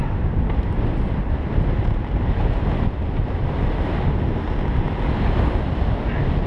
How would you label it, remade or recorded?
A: recorded